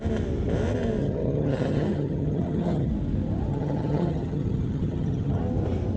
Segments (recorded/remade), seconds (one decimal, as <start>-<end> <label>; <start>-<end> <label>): 0.0-1.0 recorded; 1.0-2.9 remade; 2.9-3.5 recorded; 3.5-5.4 remade; 5.4-6.0 recorded